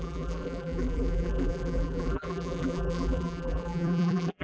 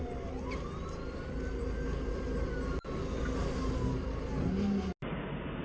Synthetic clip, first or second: first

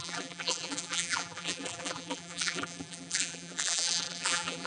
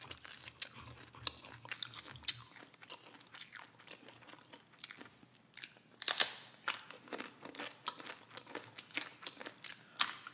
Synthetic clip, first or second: first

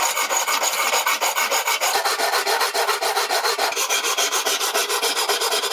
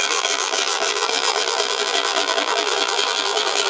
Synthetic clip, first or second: second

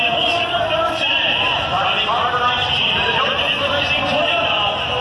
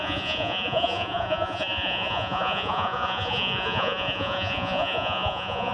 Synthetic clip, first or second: second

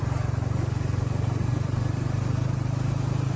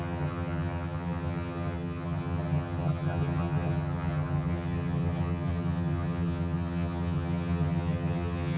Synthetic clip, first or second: second